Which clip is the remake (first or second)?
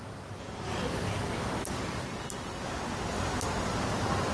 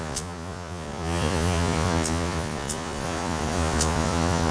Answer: second